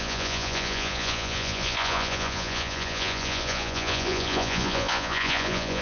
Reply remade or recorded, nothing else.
remade